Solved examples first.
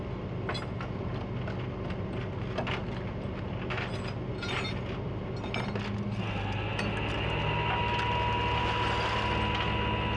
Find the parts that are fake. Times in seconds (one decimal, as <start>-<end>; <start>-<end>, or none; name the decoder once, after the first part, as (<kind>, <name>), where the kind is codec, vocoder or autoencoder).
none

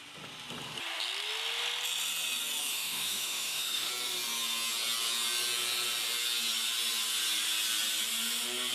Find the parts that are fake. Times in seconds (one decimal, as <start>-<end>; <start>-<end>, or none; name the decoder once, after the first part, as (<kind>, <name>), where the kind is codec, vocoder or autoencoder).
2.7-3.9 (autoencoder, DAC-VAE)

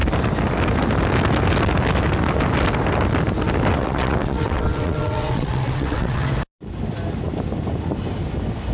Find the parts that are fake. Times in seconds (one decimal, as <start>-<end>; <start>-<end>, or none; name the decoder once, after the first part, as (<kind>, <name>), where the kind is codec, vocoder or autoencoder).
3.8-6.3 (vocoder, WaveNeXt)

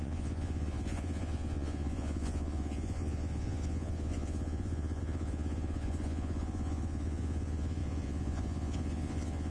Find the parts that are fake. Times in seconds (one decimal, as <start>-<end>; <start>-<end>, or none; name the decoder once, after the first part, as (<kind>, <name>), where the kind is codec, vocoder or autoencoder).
0.0-9.5 (vocoder, Vocos)

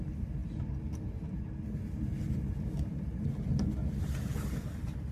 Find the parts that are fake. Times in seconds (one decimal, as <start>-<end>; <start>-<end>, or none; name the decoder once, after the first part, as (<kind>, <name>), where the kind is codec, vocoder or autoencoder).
none